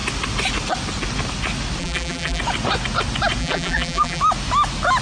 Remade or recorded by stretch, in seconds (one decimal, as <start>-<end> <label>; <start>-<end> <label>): 0.0-1.8 recorded; 1.8-2.4 remade; 2.4-3.4 recorded; 3.4-4.2 remade; 4.2-5.0 recorded